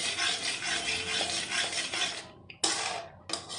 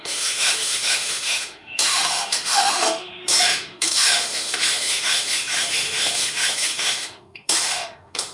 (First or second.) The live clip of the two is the first